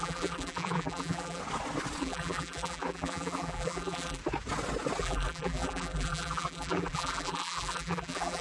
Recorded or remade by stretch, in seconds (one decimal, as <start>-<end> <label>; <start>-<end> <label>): 0.0-1.4 remade; 1.4-2.0 recorded; 2.0-4.2 remade; 4.2-5.0 recorded; 5.0-8.4 remade